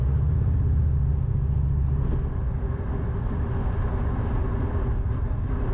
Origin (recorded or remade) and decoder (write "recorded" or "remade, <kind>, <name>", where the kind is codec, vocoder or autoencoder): recorded